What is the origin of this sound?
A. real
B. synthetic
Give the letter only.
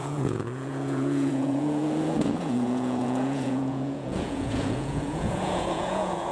B